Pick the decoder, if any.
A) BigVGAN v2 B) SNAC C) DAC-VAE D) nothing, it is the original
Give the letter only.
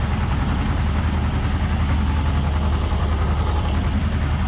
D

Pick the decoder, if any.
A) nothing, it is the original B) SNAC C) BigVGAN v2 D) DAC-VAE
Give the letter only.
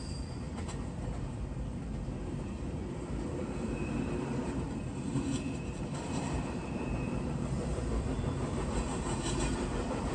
C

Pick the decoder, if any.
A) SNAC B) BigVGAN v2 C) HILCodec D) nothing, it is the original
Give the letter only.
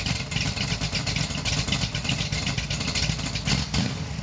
D